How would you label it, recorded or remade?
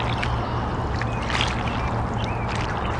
recorded